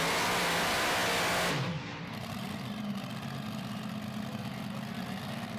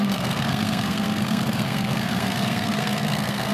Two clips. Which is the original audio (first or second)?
first